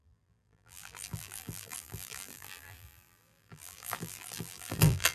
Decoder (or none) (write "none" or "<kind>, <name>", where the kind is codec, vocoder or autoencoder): vocoder, BigVGAN v2